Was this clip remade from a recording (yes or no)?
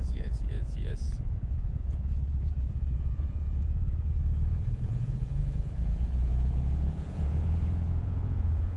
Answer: yes